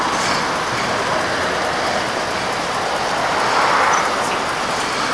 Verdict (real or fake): real